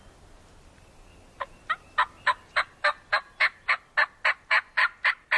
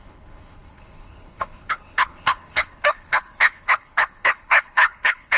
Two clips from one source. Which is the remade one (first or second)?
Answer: second